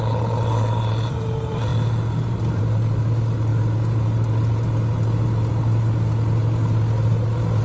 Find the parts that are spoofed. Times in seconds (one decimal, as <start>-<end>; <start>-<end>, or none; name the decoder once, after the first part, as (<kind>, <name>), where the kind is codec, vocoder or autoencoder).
none